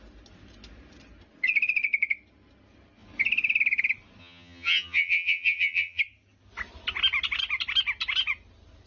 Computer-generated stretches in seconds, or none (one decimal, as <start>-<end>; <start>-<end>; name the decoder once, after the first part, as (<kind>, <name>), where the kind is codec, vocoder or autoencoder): 4.2-6.0 (vocoder, HiFi-GAN)